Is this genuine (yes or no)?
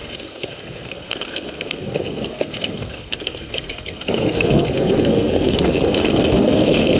no